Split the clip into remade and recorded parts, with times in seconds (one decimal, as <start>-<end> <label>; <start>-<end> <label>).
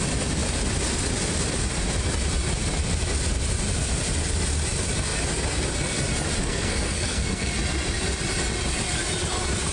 0.0-6.4 recorded; 6.4-7.5 remade; 7.5-9.7 recorded